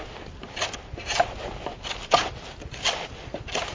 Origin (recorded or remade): recorded